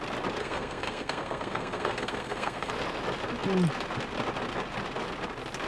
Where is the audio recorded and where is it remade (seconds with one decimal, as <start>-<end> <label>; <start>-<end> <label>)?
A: 0.0-0.4 recorded; 0.4-2.7 remade; 2.7-5.7 recorded